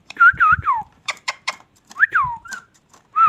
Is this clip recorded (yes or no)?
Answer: no